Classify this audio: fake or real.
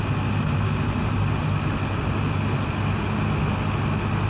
real